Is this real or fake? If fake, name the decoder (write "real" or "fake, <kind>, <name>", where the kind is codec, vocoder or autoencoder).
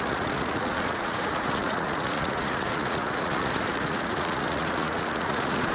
fake, vocoder, Vocos